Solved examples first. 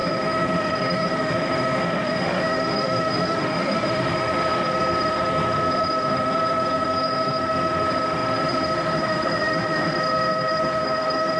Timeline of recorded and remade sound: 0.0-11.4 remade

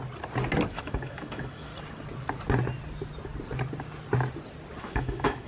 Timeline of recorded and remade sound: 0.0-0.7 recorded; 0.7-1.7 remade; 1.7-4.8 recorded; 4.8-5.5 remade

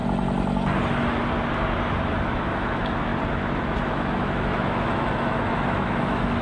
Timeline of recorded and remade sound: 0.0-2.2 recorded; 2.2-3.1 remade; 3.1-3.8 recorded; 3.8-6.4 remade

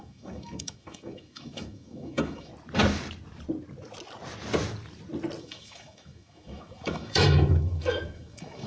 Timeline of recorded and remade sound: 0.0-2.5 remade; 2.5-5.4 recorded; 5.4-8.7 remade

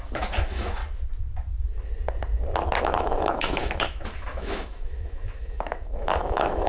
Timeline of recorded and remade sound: 0.0-0.8 remade; 0.8-2.8 recorded; 2.8-6.7 remade

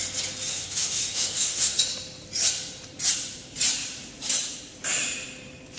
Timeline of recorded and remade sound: 0.0-0.5 recorded; 0.5-1.8 remade; 1.8-5.8 recorded

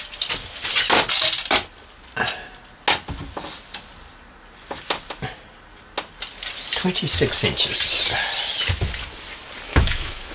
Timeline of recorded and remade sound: 0.0-9.7 recorded; 9.7-10.3 remade